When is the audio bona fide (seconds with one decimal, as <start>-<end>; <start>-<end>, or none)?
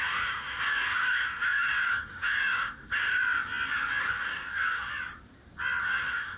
3.2-4.0; 4.9-5.8